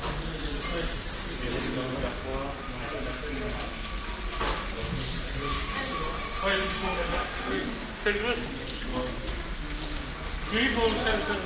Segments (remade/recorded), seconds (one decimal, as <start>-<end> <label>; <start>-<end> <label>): 0.0-6.7 recorded; 6.7-7.7 remade; 7.7-11.5 recorded